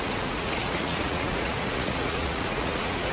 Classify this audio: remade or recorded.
remade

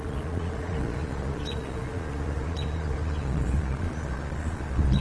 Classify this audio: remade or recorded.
remade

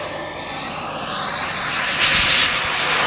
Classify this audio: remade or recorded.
recorded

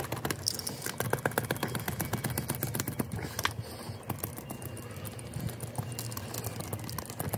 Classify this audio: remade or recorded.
recorded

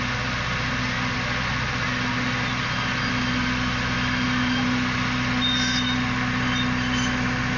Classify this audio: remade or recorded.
recorded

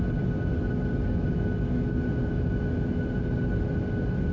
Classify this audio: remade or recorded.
recorded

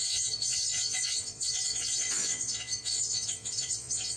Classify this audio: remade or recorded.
remade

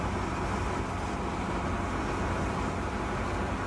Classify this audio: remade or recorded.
recorded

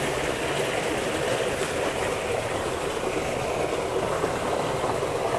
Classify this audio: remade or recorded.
recorded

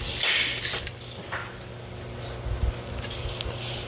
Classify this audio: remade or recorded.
recorded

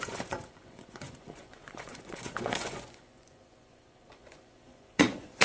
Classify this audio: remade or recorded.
remade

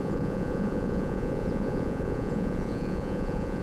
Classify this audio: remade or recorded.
remade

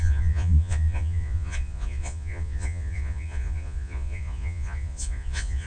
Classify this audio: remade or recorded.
remade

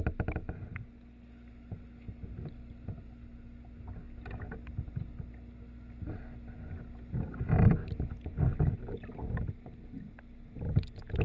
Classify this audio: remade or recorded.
recorded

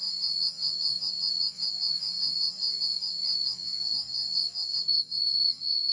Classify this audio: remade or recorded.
remade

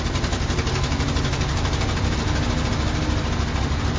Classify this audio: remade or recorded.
recorded